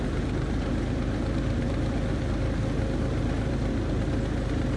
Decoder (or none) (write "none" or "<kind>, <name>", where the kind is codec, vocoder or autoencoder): none